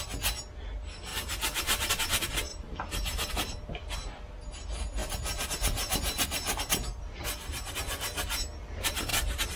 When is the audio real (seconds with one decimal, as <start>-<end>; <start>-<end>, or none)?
0.0-1.1; 1.9-2.5; 3.3-9.1